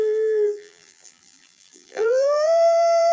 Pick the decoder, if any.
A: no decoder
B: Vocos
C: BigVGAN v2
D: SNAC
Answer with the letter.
C